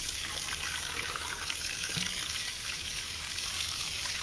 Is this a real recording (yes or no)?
no